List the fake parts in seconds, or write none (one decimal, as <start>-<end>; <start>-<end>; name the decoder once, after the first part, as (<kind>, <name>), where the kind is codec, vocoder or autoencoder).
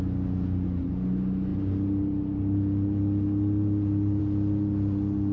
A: none